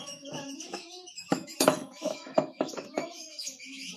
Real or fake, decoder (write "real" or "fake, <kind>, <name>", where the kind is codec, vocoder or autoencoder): fake, autoencoder, DAC-VAE